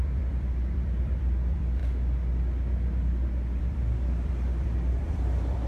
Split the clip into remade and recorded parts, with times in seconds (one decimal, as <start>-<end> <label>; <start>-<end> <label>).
0.0-1.8 remade; 1.8-3.6 recorded; 3.6-5.7 remade